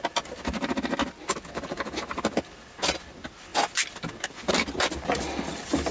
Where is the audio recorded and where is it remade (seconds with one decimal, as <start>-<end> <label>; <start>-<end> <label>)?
0.0-5.9 recorded